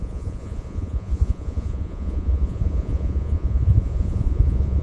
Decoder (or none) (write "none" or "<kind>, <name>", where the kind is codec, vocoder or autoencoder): vocoder, Vocos